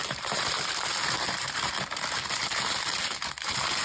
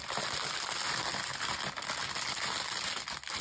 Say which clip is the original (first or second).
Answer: second